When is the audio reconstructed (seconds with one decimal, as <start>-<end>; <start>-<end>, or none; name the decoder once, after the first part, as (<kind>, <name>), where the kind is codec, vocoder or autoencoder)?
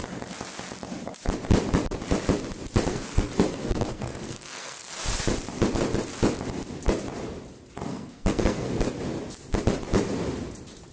2.9-4.9 (codec, SNAC); 7.9-8.7